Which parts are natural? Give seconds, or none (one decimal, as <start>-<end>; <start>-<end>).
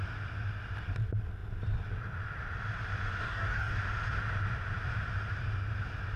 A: 0.0-3.2; 3.8-6.2